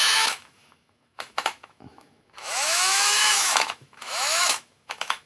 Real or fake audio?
fake